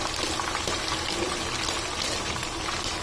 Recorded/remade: recorded